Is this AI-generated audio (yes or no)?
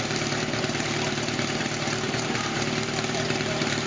yes